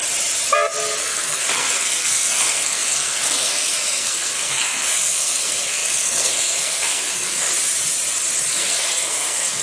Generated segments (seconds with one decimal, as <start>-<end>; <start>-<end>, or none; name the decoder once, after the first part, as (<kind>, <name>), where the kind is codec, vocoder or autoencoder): 1.0-7.5 (codec, SNAC); 8.5-9.6